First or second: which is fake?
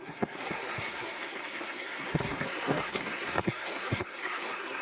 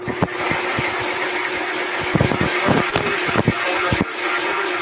first